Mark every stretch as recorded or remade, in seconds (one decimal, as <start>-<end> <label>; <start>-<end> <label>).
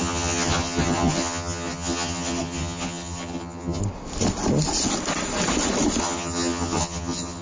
0.0-3.8 remade; 3.8-6.0 recorded; 6.0-7.4 remade